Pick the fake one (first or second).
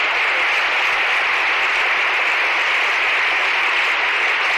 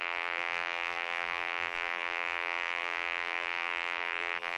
second